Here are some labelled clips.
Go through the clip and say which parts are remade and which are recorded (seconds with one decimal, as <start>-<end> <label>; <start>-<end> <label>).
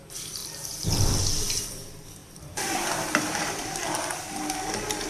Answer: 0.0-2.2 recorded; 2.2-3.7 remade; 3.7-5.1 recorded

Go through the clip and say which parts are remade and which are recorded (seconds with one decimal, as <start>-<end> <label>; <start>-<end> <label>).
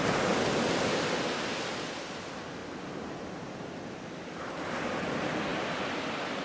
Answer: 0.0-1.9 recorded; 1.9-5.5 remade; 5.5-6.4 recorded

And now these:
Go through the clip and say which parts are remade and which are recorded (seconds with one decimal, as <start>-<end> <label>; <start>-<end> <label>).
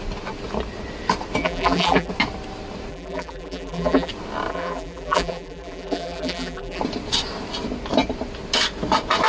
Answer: 0.0-1.4 recorded; 1.4-2.1 remade; 2.1-2.9 recorded; 2.9-4.1 remade; 4.1-4.5 recorded; 4.5-6.8 remade; 6.8-9.3 recorded